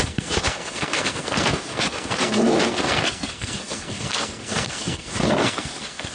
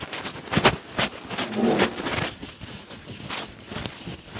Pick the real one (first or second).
second